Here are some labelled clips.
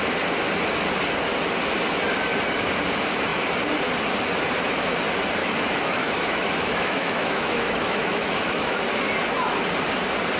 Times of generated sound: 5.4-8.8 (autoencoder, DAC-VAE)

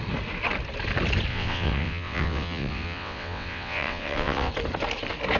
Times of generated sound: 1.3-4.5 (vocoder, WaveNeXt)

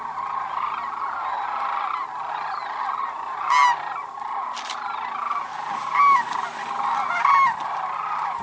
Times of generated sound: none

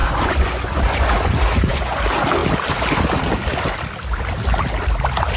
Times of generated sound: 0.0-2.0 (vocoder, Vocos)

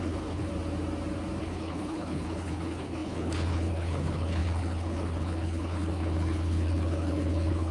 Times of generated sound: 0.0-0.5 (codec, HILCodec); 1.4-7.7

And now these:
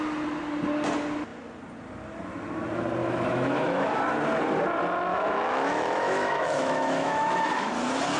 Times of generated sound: 3.0-4.0 (autoencoder, DAC-VAE); 5.1-7.7

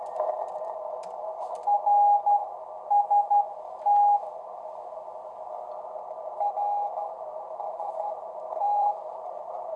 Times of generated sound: 7.3-9.8 (vocoder, BigVGAN v2)